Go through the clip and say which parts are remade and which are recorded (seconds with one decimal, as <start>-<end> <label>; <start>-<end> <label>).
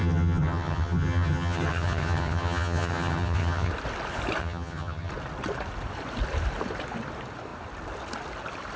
0.0-3.7 remade; 3.7-4.4 recorded; 4.4-5.1 remade; 5.1-8.8 recorded